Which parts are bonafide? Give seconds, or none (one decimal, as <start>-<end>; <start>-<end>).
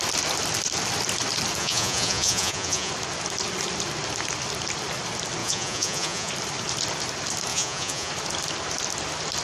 0.0-1.6; 2.9-5.4; 6.3-7.5; 8.1-9.4